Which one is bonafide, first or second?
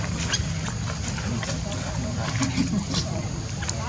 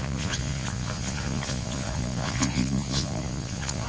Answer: first